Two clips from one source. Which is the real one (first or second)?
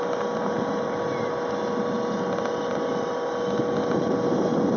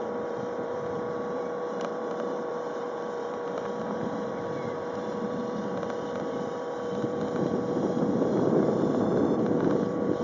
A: first